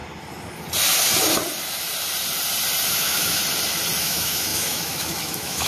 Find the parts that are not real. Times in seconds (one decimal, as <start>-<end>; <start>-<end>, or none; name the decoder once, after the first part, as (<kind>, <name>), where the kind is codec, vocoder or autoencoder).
2.9-3.4 (autoencoder, DAC-VAE); 4.0-5.7